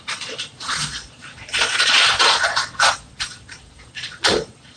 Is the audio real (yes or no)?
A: no